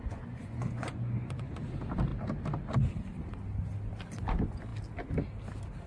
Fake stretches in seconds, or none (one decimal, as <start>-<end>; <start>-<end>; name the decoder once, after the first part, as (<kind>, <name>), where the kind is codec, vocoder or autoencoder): 0.0-1.5 (vocoder, Vocos)